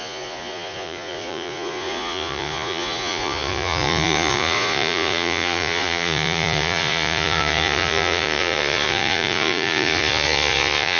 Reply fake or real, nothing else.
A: fake